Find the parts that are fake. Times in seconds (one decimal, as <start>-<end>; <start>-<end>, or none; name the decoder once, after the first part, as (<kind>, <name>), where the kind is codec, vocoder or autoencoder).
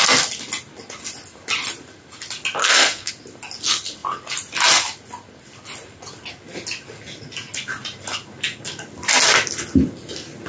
2.6-3.1 (codec, SNAC)